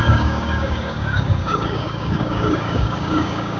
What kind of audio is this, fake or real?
fake